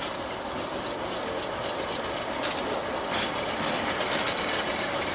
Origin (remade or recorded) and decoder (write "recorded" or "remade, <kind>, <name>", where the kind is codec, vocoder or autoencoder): recorded